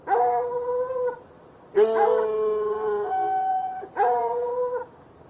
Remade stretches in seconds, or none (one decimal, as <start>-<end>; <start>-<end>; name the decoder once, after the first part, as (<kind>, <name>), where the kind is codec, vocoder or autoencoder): 3.5-4.5 (vocoder, Vocos)

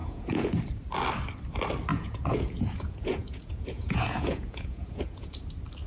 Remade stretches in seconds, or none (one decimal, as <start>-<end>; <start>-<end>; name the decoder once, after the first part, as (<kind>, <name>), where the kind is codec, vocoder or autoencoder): 0.0-0.6 (vocoder, Vocos); 1.9-5.4

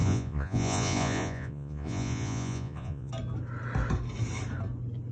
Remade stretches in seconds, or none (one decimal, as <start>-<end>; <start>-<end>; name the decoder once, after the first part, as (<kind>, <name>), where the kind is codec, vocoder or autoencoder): 0.0-3.1 (vocoder, Vocos)

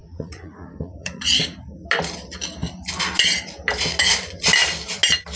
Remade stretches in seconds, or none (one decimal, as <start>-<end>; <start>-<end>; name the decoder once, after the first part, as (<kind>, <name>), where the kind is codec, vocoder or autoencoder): 0.0-1.3 (vocoder, Vocos)

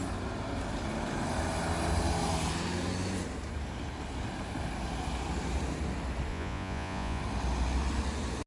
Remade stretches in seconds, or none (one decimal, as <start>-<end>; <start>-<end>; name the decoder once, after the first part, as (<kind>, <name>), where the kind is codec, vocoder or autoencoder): 6.3-7.2 (vocoder, Vocos)